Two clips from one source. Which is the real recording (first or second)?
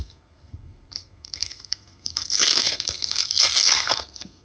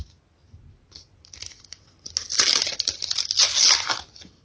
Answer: second